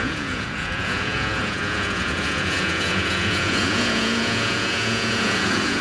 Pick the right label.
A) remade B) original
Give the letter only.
A